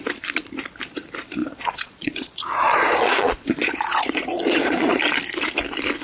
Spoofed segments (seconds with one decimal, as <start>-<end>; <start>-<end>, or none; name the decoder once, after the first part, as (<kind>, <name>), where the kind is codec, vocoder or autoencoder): 1.4-5.0 (vocoder, Vocos)